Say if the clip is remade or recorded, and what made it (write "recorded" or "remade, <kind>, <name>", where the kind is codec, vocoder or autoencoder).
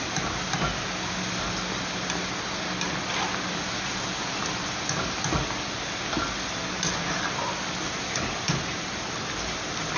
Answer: recorded